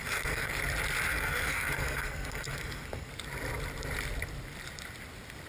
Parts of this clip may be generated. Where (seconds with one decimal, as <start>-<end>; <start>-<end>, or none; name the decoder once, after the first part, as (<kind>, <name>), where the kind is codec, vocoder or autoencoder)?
0.0-0.6 (codec, SNAC); 1.1-3.1